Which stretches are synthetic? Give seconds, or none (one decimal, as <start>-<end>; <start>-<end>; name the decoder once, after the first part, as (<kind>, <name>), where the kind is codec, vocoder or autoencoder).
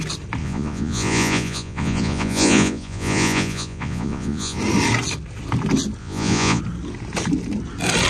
0.4-4.6 (vocoder, Vocos); 6.0-6.6